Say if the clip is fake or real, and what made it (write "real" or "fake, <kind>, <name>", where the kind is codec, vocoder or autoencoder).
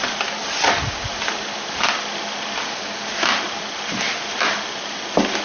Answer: real